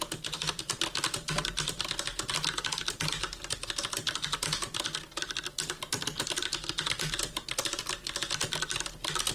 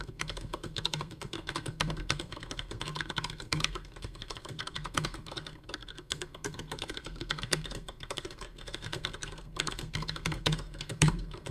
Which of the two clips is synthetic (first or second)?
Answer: second